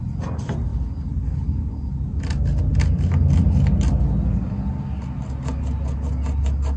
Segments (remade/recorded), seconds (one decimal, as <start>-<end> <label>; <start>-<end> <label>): 0.0-6.8 recorded

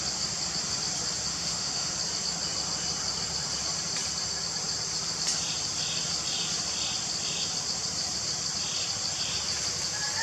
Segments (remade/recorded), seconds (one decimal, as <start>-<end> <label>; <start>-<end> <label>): 0.0-1.3 recorded; 1.3-1.9 remade; 1.9-10.2 recorded

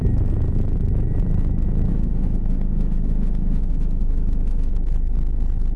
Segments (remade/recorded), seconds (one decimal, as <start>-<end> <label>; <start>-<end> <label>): 0.0-1.9 recorded; 1.9-4.7 remade; 4.7-5.8 recorded

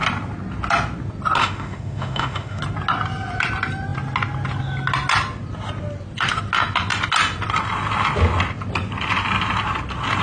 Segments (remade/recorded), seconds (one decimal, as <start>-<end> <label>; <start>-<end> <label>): 0.0-1.4 recorded; 1.4-2.6 remade; 2.6-10.2 recorded

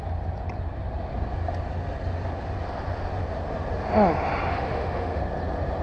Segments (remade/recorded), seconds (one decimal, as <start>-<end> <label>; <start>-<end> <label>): 0.0-4.5 recorded; 4.5-5.2 remade; 5.2-5.8 recorded

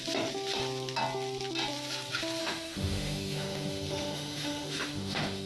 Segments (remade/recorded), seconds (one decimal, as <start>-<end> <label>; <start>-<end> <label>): 0.0-2.4 recorded; 2.4-5.5 remade

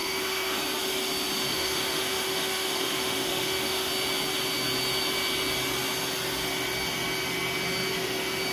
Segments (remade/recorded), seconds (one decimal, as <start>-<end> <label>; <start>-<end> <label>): 0.0-0.6 remade; 0.6-1.5 recorded; 1.5-3.9 remade; 3.9-8.5 recorded